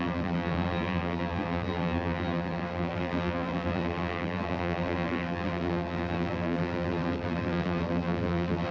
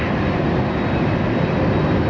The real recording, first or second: second